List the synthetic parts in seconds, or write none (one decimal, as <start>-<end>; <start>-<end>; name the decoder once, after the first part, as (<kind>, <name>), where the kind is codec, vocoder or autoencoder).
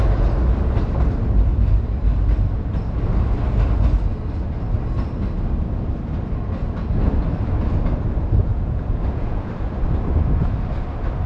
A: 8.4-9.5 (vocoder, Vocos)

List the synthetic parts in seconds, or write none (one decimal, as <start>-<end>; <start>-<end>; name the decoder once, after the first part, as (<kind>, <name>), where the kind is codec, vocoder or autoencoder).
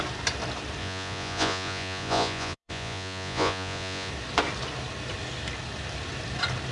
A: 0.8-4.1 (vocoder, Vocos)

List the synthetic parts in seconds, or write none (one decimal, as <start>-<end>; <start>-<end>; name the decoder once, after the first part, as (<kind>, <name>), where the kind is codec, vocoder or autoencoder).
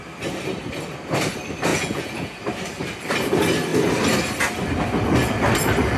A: 1.7-2.4 (vocoder, Vocos)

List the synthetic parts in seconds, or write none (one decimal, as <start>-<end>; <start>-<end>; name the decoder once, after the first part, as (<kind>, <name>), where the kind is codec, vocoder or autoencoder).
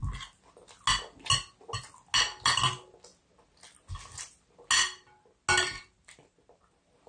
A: none